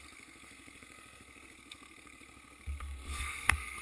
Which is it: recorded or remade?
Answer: remade